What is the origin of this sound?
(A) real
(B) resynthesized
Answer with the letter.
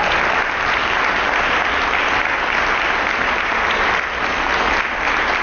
A